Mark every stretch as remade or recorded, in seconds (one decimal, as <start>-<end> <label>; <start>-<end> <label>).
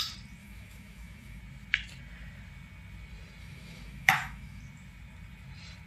0.0-0.4 recorded; 0.4-1.4 remade; 1.4-3.4 recorded; 3.4-4.6 remade; 4.6-5.9 recorded